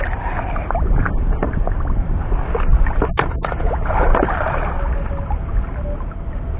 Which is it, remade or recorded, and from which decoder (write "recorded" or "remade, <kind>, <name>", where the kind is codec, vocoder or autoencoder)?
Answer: recorded